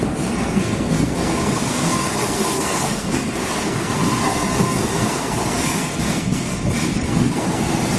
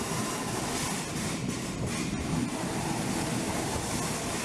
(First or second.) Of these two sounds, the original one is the second